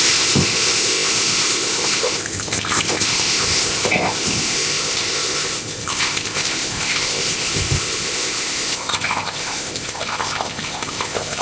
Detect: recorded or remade remade